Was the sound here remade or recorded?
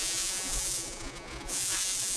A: remade